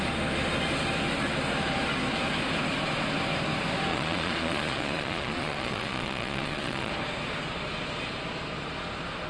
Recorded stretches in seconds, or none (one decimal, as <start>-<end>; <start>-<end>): 0.0-3.9; 6.9-9.3